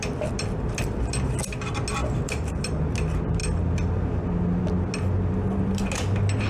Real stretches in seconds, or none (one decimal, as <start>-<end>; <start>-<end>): 1.4-2.0; 2.7-3.4; 4.3-6.5